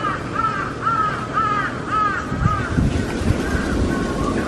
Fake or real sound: real